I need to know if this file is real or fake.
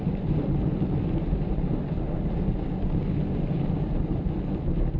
real